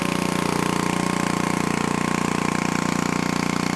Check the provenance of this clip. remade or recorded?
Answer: recorded